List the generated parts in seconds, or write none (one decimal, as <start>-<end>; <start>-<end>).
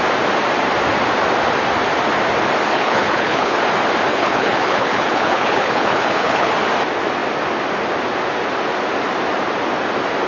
2.7-3.6; 4.1-6.5